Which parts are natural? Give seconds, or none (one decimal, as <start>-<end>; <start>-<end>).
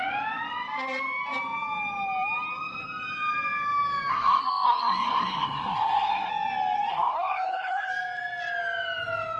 0.0-4.1; 6.3-6.9; 7.9-9.4